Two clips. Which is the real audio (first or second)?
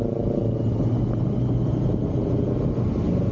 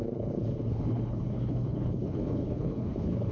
first